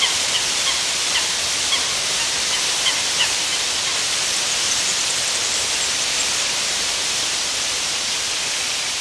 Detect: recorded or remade remade